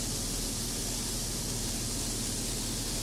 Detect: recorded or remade recorded